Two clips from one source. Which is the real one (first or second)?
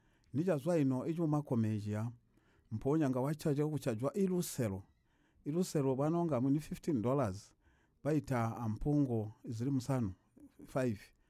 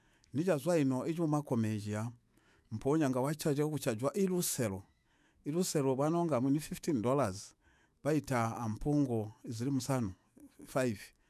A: first